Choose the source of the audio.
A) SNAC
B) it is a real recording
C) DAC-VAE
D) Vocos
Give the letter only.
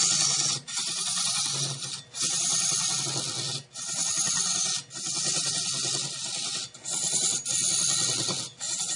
B